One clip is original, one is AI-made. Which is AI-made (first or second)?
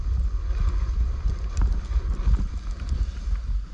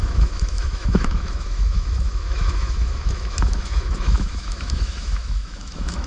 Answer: second